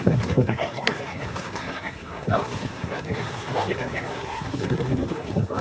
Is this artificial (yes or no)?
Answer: yes